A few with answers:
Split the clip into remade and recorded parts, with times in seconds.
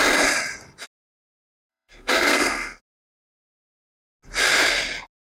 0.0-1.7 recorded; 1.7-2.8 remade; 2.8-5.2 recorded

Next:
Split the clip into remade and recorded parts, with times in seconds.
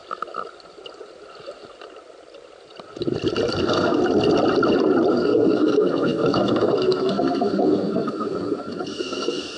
0.0-3.6 recorded; 3.6-4.0 remade; 4.0-5.1 recorded; 5.1-9.6 remade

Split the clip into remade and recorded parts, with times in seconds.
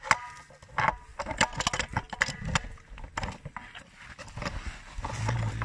0.0-5.6 recorded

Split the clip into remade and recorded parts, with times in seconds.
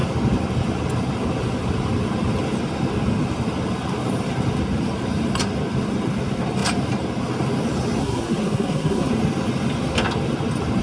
0.0-8.0 recorded; 8.0-9.1 remade; 9.1-10.8 recorded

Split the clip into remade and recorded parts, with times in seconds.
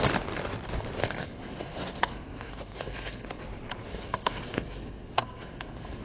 0.0-1.0 recorded; 1.0-3.4 remade; 3.4-3.9 recorded; 3.9-6.0 remade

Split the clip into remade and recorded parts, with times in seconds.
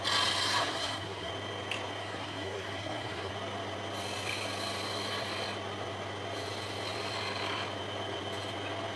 0.0-0.6 recorded; 0.6-1.3 remade; 1.3-2.0 recorded; 2.0-3.3 remade; 3.3-9.0 recorded